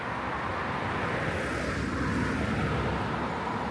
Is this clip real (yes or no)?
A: yes